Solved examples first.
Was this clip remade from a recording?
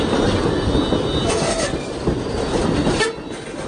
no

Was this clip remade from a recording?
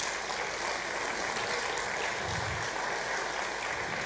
no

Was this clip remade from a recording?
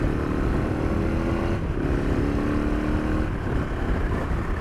no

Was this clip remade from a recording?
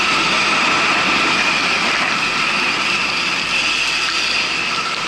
no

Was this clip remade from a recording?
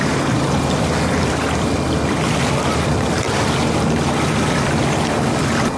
no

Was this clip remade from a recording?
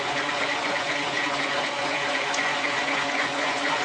yes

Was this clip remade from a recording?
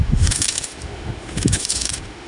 yes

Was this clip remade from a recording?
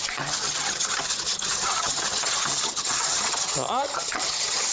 yes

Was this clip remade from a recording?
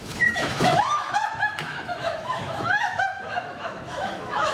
yes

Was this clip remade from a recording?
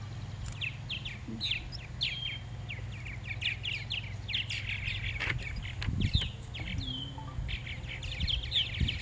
no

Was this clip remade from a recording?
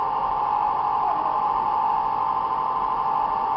no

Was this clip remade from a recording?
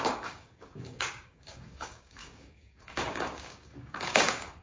yes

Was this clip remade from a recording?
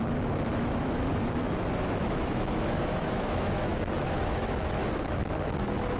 yes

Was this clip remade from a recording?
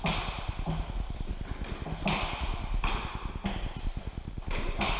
no